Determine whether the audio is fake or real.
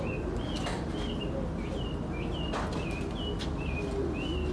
real